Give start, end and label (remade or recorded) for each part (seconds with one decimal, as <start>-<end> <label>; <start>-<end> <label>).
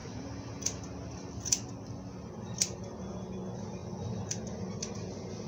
0.0-5.5 recorded